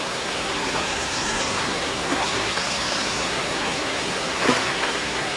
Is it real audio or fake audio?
fake